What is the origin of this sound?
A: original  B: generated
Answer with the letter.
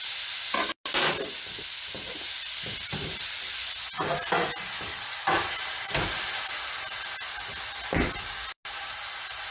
A